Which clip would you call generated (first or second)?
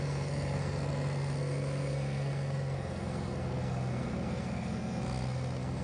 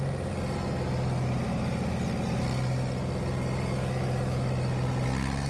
first